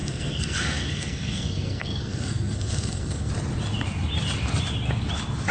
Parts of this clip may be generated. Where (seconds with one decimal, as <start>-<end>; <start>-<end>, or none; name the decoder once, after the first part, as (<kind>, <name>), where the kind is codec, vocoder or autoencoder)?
0.0-3.3 (codec, SNAC)